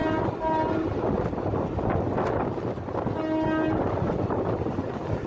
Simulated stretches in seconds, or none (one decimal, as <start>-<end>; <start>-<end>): none